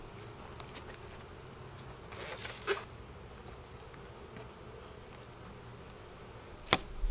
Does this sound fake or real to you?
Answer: real